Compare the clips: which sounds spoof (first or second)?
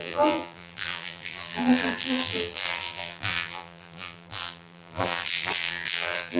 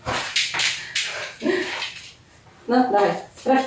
first